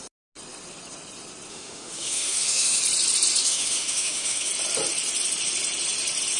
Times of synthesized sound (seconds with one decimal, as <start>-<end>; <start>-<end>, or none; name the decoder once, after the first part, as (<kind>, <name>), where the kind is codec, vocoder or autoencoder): 1.5-2.8 (autoencoder, DAC-VAE); 3.4-4.5